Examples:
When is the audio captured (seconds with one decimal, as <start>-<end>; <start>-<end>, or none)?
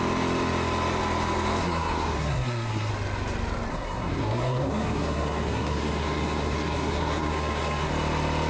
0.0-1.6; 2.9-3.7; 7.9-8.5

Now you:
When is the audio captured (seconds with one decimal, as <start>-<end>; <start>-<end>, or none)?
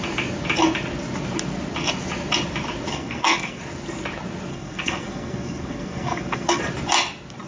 0.0-2.9; 3.6-4.5; 6.6-7.5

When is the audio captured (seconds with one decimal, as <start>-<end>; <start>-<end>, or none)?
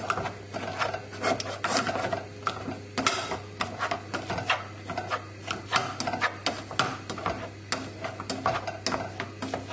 0.0-9.7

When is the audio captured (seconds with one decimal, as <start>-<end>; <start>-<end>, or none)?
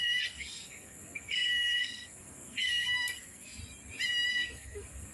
3.6-4.3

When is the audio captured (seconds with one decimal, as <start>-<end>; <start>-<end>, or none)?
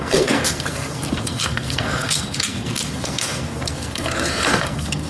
none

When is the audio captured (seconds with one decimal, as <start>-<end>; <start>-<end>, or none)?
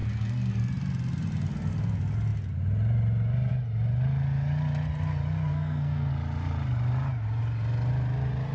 0.5-5.5; 6.1-8.5